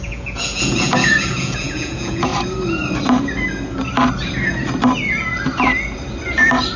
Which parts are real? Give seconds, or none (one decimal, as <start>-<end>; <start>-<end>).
2.3-6.8